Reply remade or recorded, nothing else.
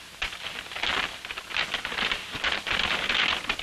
recorded